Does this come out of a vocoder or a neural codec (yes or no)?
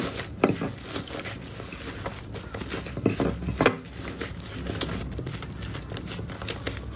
no